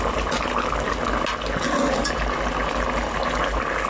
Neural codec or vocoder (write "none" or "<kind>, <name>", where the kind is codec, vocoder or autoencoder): none